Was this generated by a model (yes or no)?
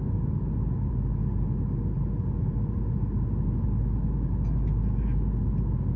no